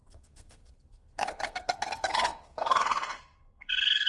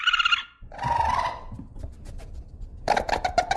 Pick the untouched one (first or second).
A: second